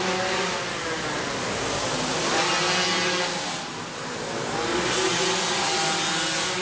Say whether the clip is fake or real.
real